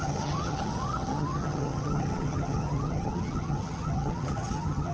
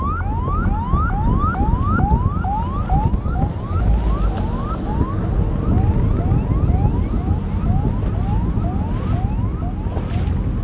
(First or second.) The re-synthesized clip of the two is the first